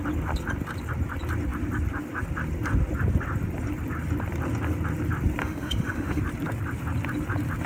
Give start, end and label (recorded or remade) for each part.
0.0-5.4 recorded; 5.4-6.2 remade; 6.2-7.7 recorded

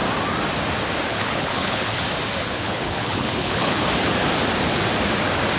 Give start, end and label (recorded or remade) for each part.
0.0-1.1 recorded; 1.1-2.0 remade; 2.0-2.4 recorded; 2.4-3.9 remade; 3.9-5.6 recorded

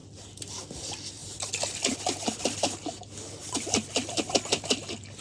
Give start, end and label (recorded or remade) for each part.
0.0-5.2 recorded

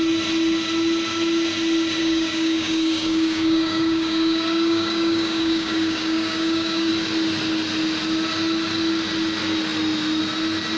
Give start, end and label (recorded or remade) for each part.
0.0-2.0 recorded; 2.0-6.9 remade; 6.9-10.8 recorded